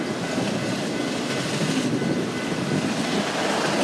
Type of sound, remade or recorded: remade